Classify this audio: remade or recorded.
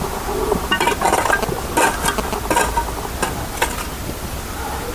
recorded